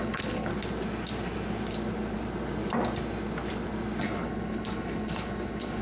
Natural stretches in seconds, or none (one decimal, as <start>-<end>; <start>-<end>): 0.5-4.0